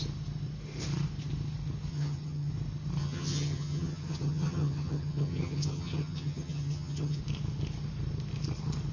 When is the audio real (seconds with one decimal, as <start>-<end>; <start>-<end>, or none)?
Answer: 0.0-1.9; 2.5-3.0; 7.2-8.9